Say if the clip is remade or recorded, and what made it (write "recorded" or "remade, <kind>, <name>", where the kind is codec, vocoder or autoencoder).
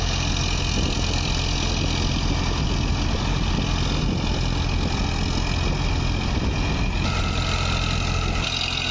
recorded